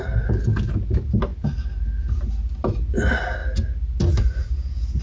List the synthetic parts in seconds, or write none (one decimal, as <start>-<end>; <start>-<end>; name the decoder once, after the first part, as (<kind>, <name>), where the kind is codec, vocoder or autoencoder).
none